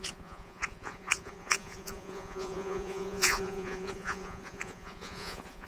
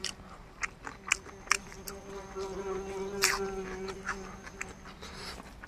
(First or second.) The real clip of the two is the second